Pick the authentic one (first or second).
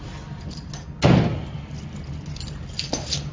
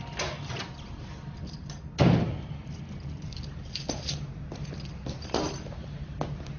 first